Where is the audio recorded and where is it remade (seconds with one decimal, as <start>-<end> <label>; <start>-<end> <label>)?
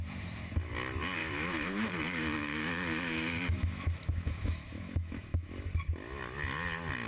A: 0.0-1.2 recorded; 1.2-5.5 remade; 5.5-7.1 recorded